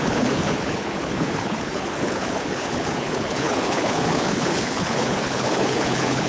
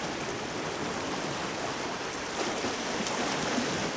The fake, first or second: first